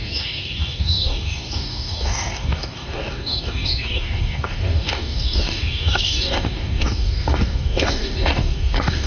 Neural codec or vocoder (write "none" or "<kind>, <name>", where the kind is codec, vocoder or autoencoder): codec, DAC